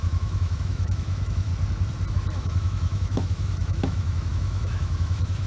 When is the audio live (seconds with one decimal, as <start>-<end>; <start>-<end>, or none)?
1.5-2.1